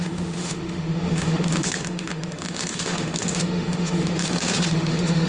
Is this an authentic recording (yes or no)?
no